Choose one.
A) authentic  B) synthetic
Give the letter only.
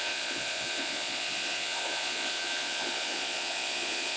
B